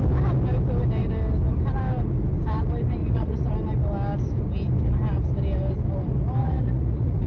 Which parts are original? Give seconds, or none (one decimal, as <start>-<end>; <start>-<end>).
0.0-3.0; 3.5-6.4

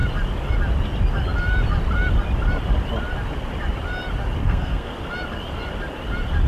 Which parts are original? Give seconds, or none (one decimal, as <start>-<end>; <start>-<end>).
0.0-4.4; 4.9-6.5

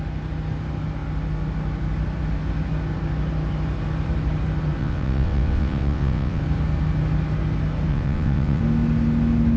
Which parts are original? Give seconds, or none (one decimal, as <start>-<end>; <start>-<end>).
0.0-4.8; 6.4-7.9; 8.6-9.6

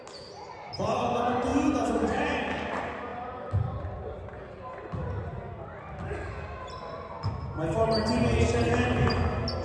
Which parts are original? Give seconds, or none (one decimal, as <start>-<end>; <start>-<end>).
0.0-9.6